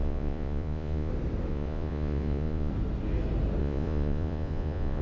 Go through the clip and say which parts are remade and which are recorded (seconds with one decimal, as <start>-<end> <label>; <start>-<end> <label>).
0.0-1.1 remade; 1.1-1.5 recorded; 1.5-2.7 remade; 2.7-3.6 recorded; 3.6-5.0 remade